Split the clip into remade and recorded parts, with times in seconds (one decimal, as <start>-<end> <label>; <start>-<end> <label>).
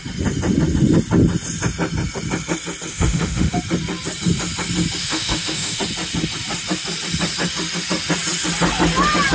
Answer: 0.0-2.9 recorded; 2.9-3.5 remade; 3.5-5.0 recorded; 5.0-5.8 remade; 5.8-9.3 recorded